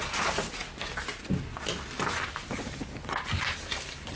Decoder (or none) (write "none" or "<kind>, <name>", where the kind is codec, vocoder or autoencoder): none